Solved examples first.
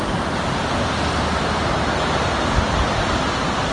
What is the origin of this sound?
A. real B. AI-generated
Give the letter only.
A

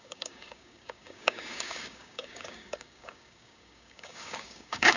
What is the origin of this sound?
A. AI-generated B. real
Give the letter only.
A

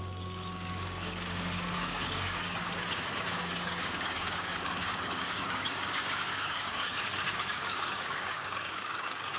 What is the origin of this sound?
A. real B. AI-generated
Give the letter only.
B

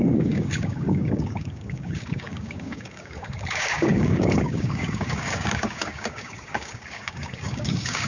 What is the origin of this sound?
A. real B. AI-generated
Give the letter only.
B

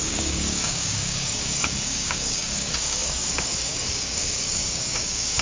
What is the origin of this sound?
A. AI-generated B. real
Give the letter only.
A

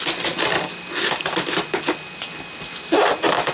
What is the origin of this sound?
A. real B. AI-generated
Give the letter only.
A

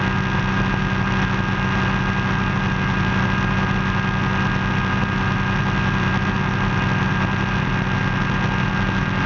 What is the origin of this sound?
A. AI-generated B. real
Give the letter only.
B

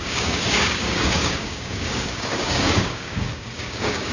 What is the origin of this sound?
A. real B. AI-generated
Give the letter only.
B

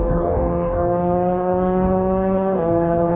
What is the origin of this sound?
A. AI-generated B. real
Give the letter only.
A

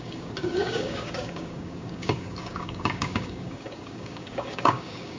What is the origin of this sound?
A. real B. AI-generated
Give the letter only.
B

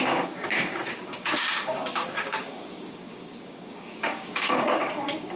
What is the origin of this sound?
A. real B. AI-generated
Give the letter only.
B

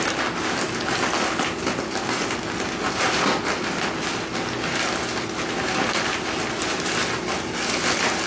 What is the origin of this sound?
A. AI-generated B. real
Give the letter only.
B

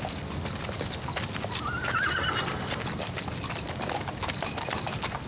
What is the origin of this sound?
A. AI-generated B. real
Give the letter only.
B